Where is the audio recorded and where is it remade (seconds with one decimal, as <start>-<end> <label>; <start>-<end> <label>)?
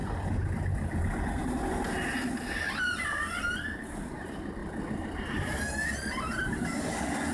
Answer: 0.0-7.3 recorded